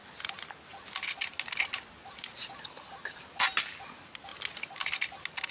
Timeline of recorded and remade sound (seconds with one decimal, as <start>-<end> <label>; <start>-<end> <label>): 0.0-5.5 recorded